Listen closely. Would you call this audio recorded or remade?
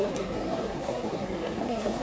remade